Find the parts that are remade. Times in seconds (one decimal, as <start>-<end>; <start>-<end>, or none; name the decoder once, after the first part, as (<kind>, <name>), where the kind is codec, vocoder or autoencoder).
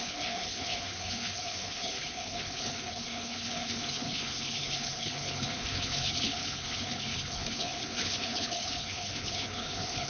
0.0-10.1 (codec, HILCodec)